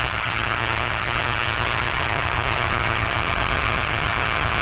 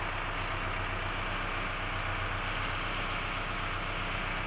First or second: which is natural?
second